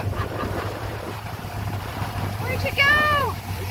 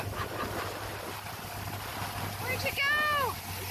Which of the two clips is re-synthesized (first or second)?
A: first